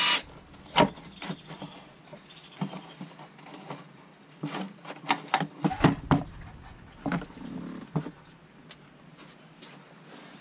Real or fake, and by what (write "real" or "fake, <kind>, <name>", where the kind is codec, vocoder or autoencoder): real